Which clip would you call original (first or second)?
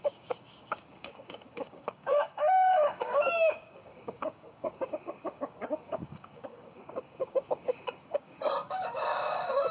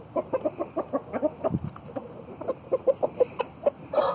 second